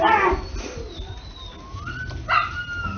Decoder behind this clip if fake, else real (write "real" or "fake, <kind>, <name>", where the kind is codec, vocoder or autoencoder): real